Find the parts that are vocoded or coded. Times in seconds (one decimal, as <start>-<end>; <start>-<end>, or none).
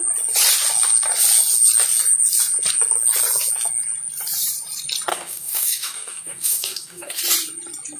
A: 5.1-7.2